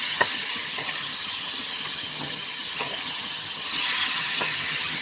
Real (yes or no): no